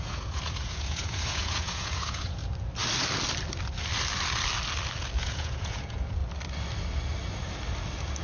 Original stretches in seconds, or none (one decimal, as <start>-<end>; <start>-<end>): 2.4-5.2; 6.2-8.2